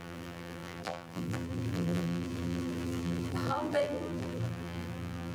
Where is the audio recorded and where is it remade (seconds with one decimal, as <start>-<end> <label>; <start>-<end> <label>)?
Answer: 0.0-5.3 remade